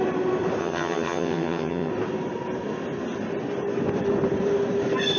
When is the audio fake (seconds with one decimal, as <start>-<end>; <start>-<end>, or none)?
0.6-1.9